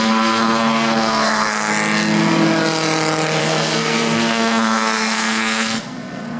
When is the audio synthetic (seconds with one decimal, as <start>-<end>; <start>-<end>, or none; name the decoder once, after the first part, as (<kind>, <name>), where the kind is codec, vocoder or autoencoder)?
0.0-1.7 (codec, SNAC); 3.4-6.4